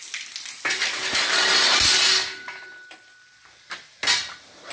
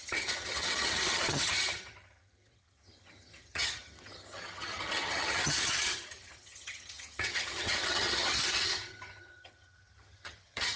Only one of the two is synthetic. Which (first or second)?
second